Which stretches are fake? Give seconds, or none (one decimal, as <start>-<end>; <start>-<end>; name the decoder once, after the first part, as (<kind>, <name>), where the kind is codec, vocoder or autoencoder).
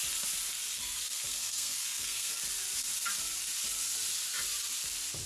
0.8-2.4 (codec, SNAC)